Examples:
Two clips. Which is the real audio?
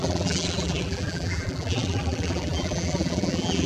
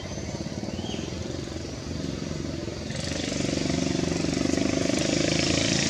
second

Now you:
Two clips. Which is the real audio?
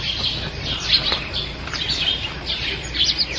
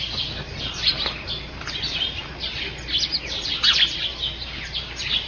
second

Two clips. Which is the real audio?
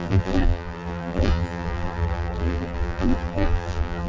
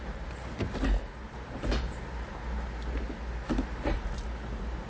second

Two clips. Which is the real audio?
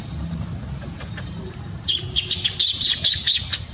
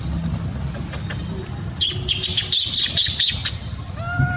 second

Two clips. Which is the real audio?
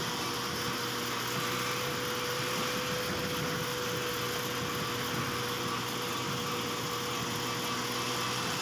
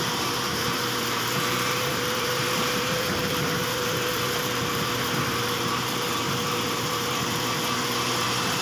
first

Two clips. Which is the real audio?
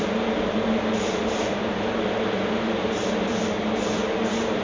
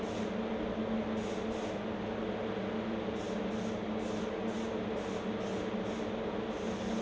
second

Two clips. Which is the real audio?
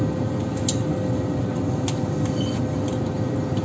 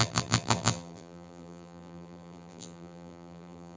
first